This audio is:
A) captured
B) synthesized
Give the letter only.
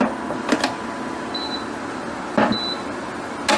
A